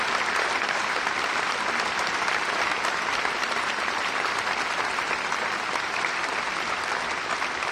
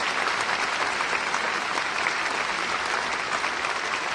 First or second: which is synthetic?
first